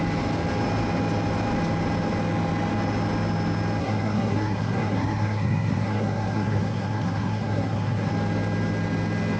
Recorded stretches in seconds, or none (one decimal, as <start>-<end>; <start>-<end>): 0.0-3.8; 8.1-9.4